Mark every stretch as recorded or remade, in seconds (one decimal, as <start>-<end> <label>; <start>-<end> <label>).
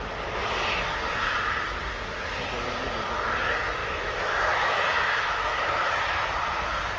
0.0-3.8 recorded; 3.8-6.0 remade; 6.0-7.0 recorded